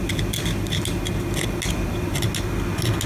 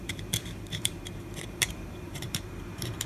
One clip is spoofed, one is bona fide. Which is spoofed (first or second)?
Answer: second